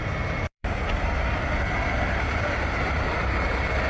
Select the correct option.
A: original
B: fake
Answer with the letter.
B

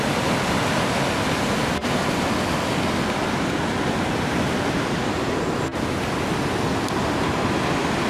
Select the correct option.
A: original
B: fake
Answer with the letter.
A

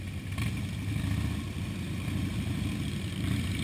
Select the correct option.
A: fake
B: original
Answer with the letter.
B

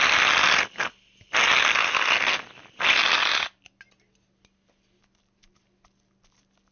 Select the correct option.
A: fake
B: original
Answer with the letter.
B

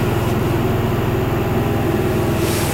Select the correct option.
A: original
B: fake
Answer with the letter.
A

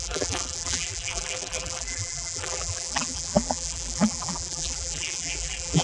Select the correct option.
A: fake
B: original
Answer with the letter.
A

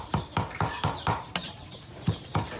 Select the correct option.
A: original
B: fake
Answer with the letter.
B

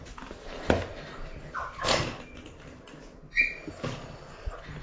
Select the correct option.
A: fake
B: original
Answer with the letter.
B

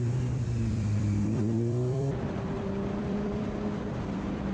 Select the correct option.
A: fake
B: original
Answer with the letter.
A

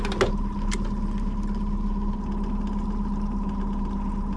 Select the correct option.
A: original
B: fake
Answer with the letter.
A